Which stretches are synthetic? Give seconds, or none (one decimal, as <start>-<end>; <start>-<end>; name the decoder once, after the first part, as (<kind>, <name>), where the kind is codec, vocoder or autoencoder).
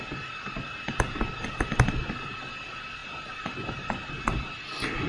none